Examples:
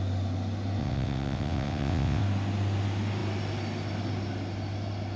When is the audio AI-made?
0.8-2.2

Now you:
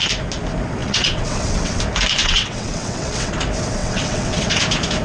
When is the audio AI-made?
0.8-1.8; 2.2-3.3; 3.8-4.5

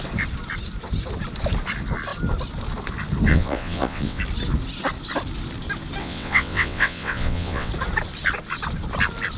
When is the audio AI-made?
3.3-4.2; 6.0-7.7

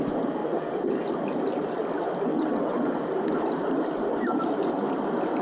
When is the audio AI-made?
0.4-0.9; 2.3-3.0

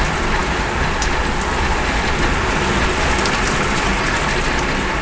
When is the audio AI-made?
none